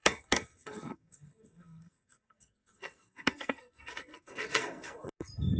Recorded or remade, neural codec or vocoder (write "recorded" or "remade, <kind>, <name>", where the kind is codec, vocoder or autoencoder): remade, codec, SNAC